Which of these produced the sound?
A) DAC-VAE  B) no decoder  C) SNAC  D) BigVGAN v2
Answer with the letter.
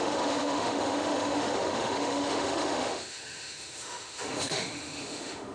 A